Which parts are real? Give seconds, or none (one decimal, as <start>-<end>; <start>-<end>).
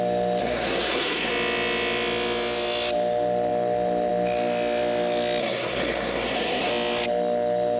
0.0-0.4; 1.3-5.4; 6.7-7.8